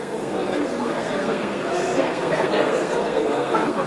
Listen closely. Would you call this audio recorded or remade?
remade